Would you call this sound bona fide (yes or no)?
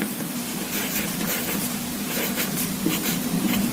no